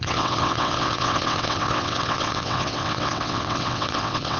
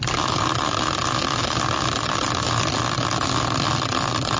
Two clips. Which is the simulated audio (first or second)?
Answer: first